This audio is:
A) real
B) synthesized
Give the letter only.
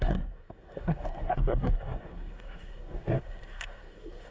B